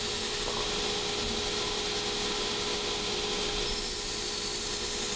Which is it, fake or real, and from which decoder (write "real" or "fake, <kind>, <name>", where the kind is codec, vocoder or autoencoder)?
real